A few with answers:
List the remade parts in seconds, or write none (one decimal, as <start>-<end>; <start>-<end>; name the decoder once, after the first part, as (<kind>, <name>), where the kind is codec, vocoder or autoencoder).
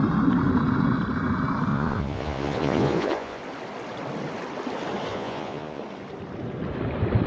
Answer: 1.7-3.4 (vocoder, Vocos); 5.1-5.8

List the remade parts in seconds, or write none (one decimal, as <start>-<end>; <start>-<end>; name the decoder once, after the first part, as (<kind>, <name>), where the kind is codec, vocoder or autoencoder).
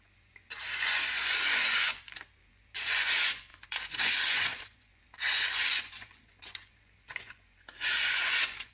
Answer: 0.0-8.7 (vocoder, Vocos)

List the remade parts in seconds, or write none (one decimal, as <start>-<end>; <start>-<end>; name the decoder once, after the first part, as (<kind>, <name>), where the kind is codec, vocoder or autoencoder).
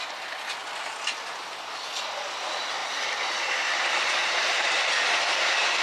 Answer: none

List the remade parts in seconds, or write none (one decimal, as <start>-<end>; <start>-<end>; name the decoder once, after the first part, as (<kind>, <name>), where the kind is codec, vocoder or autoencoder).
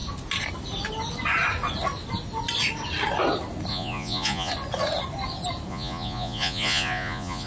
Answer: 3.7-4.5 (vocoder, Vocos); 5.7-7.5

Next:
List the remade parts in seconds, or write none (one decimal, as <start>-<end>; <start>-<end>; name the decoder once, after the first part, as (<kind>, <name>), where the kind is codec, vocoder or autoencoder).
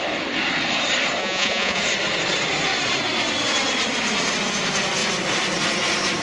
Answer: 1.2-1.8 (vocoder, Vocos)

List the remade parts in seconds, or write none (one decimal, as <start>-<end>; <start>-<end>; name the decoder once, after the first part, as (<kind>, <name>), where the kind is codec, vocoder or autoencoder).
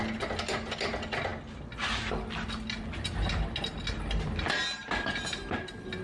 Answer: none